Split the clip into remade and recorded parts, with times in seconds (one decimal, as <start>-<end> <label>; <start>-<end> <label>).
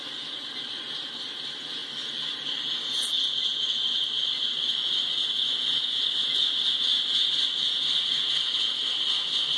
0.0-9.6 recorded